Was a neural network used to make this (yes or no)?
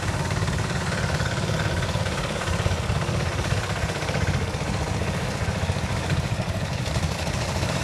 yes